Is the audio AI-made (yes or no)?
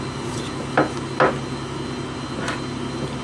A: no